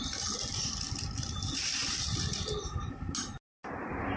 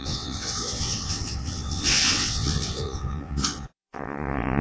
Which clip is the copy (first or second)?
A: second